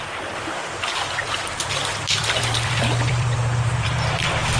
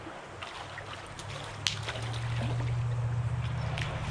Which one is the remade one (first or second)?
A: first